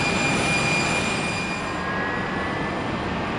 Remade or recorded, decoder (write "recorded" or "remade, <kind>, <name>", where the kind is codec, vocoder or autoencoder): recorded